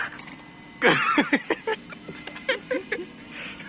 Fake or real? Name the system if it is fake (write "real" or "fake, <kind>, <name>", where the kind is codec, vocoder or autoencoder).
real